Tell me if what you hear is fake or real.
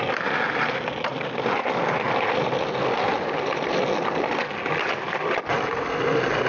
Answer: real